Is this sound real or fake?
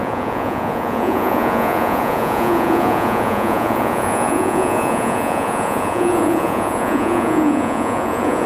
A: fake